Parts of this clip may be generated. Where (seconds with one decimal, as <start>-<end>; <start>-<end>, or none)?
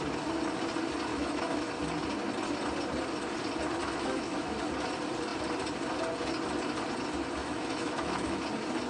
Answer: 1.1-1.7; 3.8-4.6; 7.4-8.4